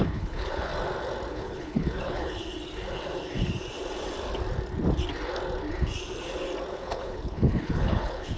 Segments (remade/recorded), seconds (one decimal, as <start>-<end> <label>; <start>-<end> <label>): 0.0-0.7 remade; 0.7-1.3 recorded; 1.3-2.4 remade; 2.4-6.7 recorded; 6.7-8.4 remade